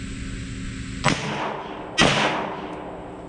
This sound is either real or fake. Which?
real